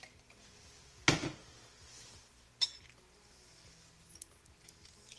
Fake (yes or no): no